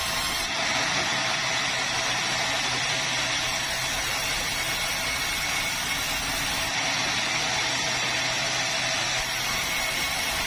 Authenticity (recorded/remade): remade